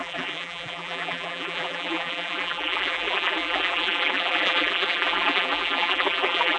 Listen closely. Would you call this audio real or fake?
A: fake